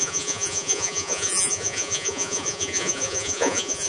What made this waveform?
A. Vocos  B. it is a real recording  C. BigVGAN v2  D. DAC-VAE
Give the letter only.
A